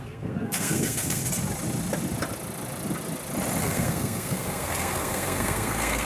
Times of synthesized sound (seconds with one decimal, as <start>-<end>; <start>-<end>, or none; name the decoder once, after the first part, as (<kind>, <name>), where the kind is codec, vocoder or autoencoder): 0.0-1.2 (codec, SNAC); 3.6-6.0